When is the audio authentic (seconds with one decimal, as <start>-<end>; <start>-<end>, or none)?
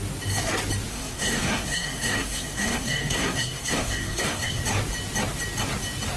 0.0-0.9; 4.6-6.2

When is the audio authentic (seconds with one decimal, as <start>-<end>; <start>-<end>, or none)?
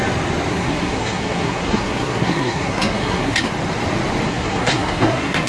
0.0-0.5; 3.5-4.3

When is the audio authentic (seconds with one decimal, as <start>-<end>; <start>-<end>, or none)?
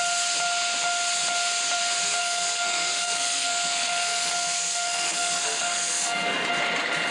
0.0-2.2; 6.5-7.1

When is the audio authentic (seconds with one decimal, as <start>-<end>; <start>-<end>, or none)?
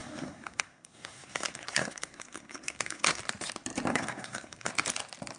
3.2-3.9; 4.7-5.4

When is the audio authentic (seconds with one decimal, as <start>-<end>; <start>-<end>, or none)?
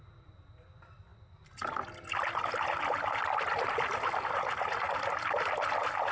0.0-6.1